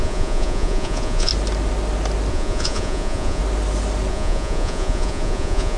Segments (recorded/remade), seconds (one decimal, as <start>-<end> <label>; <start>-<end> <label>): 0.0-1.3 remade; 1.3-2.3 recorded; 2.3-3.4 remade; 3.4-4.1 recorded; 4.1-5.8 remade